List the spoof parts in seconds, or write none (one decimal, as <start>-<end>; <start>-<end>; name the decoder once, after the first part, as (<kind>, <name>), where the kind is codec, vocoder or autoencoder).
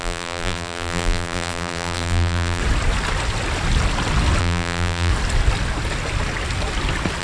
0.0-2.6 (vocoder, BigVGAN v2); 4.4-5.1